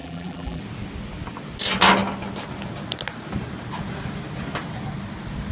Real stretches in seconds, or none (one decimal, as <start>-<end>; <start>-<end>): 0.6-5.5